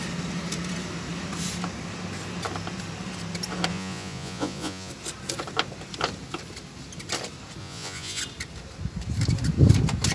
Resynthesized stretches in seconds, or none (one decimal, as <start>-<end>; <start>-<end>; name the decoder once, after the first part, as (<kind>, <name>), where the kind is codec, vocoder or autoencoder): 3.7-4.9 (vocoder, Vocos); 7.6-8.2